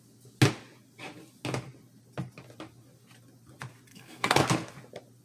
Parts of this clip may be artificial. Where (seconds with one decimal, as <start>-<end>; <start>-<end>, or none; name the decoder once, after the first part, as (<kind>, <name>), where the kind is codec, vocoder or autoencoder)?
3.9-4.4 (codec, SNAC)